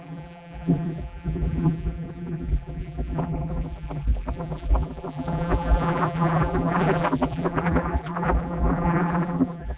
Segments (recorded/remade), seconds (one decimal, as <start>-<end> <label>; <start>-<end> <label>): 0.0-9.8 remade